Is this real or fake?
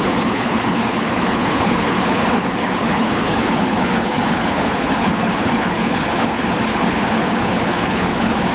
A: fake